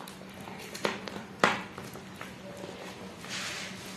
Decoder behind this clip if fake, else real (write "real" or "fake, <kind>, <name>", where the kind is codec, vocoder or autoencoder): real